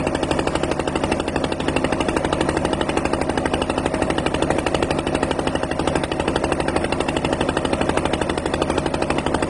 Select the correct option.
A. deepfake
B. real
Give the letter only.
B